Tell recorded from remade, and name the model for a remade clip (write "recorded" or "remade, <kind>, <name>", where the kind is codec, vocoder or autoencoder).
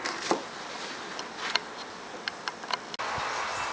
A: recorded